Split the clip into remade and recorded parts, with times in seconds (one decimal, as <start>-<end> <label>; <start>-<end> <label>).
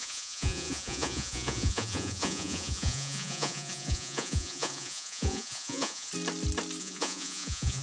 0.0-6.1 remade; 6.1-6.8 recorded; 6.8-7.8 remade